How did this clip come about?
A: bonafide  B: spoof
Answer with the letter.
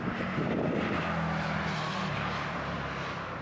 A